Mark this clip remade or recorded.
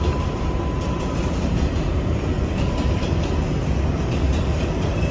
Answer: remade